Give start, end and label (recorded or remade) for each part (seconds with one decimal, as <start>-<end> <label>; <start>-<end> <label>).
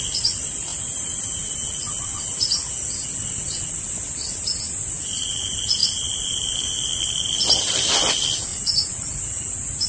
0.0-8.5 recorded; 8.5-9.9 remade